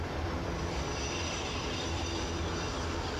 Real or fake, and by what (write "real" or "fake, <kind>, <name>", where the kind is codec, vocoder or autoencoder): fake, vocoder, BigVGAN v2